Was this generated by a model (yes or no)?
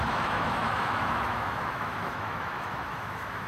yes